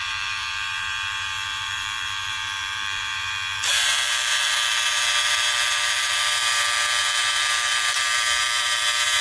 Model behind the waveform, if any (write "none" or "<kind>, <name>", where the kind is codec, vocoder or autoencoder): vocoder, BigVGAN v2